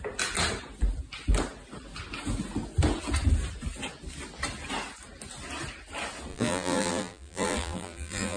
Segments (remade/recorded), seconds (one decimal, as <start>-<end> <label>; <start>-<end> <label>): 0.0-6.3 recorded; 6.3-8.4 remade